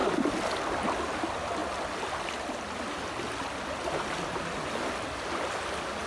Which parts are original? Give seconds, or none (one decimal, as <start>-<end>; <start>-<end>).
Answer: 0.0-6.1